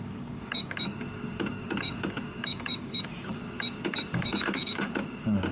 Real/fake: fake